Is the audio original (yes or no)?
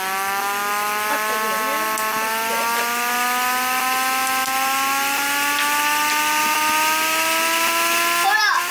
yes